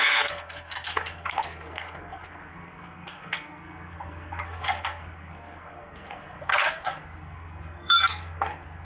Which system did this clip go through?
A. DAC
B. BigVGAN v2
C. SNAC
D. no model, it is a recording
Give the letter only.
C